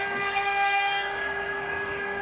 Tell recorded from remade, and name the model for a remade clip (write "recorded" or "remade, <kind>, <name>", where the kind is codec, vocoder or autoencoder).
remade, codec, SNAC